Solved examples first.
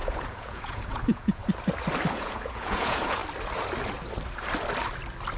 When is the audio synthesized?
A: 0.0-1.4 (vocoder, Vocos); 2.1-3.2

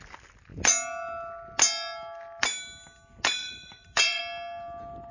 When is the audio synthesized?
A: 3.4-4.2 (vocoder, Vocos)